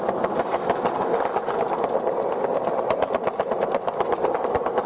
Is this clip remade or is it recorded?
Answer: recorded